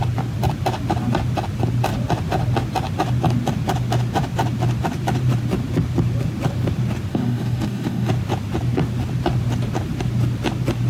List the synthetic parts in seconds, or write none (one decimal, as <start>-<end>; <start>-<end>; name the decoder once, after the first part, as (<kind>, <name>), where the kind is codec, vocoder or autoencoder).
7.1-8.1 (codec, DAC)